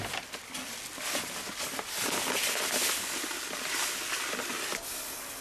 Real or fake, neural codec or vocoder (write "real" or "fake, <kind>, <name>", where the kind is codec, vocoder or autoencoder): real